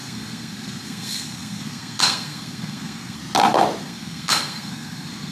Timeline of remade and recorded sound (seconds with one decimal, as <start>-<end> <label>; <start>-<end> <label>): 0.0-3.2 remade; 3.2-3.8 recorded; 3.8-5.3 remade